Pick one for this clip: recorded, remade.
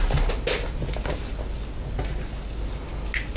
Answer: recorded